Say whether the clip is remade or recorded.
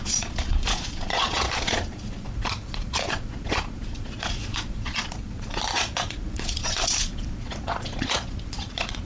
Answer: remade